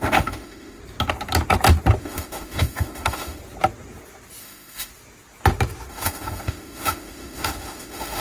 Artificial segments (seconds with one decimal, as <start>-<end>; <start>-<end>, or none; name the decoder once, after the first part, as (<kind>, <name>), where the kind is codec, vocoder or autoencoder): 0.0-0.8 (autoencoder, DAC-VAE); 2.0-3.4; 4.4-4.9; 5.9-8.2

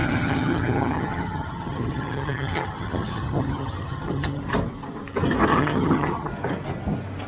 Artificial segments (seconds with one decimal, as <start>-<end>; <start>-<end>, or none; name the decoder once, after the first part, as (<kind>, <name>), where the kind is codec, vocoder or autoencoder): 0.0-4.4 (vocoder, HiFi-GAN); 5.5-6.3

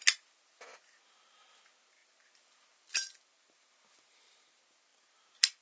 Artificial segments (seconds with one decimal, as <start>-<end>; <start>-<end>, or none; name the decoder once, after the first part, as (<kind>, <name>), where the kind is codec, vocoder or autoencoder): none

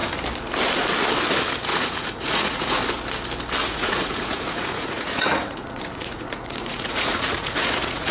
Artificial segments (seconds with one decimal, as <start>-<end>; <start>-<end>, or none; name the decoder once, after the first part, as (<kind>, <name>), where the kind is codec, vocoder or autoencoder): 1.7-2.8 (vocoder, Vocos); 3.6-8.1

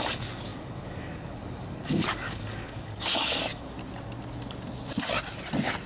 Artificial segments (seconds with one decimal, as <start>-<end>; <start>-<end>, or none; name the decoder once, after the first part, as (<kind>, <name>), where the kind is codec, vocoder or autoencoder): 0.0-3.8 (codec, DAC)

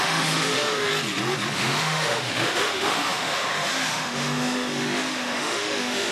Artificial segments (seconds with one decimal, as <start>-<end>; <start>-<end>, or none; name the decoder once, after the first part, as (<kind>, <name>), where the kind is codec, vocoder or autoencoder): 0.0-0.9 (autoencoder, DAC-VAE); 1.5-6.1

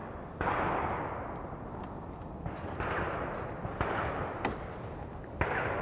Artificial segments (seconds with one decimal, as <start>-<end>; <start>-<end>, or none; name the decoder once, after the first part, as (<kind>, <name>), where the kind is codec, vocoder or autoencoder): none